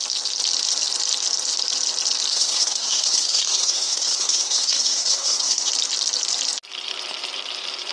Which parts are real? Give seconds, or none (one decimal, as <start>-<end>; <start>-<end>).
0.0-2.3; 5.7-7.9